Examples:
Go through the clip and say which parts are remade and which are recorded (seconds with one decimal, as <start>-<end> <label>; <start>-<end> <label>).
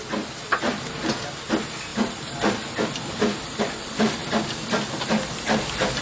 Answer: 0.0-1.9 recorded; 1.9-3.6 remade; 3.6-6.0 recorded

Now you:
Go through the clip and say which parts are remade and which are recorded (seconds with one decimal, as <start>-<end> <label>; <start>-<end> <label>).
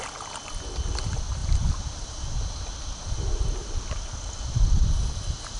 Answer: 0.0-5.6 recorded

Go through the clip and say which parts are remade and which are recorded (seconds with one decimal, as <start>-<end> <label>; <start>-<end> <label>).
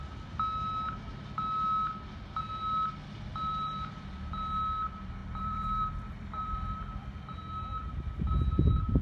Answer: 0.0-3.3 recorded; 3.3-3.9 remade; 3.9-5.2 recorded; 5.2-7.0 remade; 7.0-9.0 recorded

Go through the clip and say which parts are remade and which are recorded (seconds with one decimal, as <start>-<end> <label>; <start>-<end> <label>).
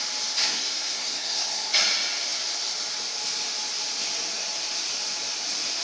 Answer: 0.0-0.4 recorded; 0.4-1.7 remade; 1.7-5.8 recorded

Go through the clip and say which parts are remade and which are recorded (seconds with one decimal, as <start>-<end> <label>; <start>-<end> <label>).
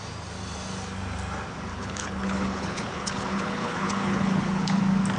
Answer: 0.0-1.7 recorded; 1.7-4.8 remade; 4.8-5.2 recorded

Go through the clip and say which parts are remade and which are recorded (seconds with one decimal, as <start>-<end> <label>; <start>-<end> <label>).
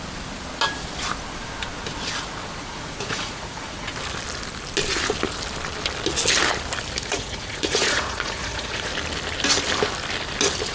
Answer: 0.0-2.6 recorded; 2.6-3.9 remade; 3.9-7.0 recorded; 7.0-8.9 remade; 8.9-10.7 recorded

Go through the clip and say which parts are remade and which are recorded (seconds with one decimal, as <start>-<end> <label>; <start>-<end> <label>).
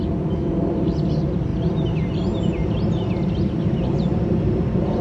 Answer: 0.0-5.0 recorded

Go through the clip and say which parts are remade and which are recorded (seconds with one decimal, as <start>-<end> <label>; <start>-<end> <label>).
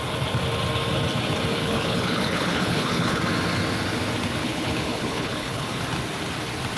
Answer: 0.0-1.6 recorded; 1.6-3.2 remade; 3.2-4.4 recorded; 4.4-5.8 remade; 5.8-6.8 recorded